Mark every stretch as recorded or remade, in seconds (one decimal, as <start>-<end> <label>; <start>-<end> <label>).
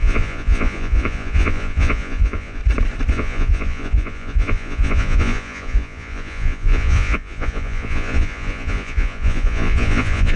0.0-2.6 remade; 2.6-3.1 recorded; 3.1-10.4 remade